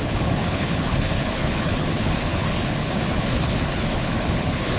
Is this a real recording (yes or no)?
no